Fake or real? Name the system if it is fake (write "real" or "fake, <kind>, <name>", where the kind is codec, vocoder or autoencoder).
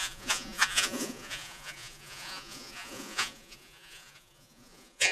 fake, vocoder, Vocos